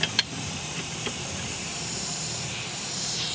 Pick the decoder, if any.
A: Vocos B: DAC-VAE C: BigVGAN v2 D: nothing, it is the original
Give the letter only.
C